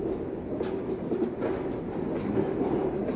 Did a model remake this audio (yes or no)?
no